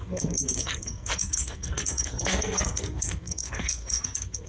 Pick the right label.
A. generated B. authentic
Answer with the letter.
A